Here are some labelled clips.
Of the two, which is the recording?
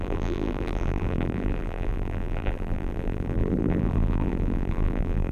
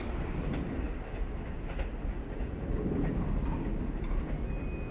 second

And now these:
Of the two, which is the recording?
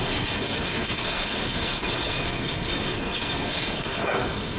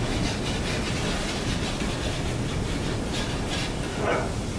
second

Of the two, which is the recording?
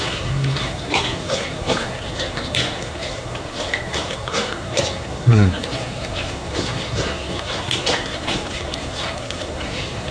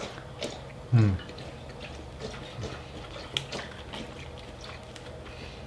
second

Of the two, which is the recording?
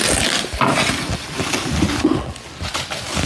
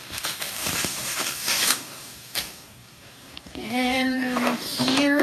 first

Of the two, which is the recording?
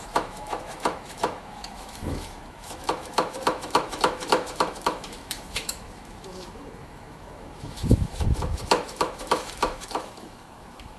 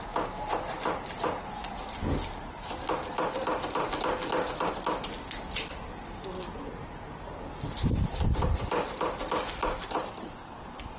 second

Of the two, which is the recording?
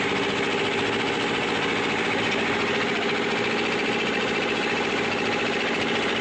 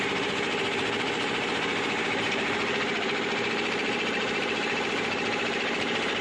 first